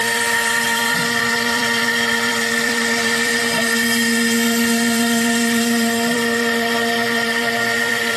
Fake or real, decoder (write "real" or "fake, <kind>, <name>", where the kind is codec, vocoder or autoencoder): fake, vocoder, BigVGAN v2